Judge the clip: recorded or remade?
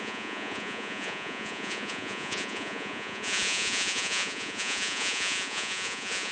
remade